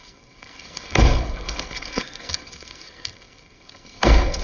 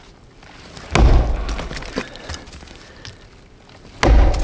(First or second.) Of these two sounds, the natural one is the second